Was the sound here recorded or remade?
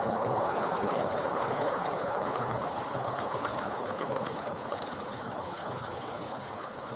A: remade